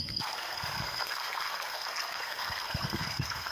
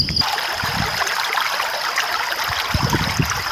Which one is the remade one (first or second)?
first